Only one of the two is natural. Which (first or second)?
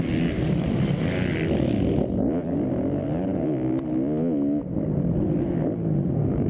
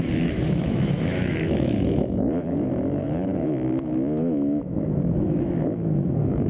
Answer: first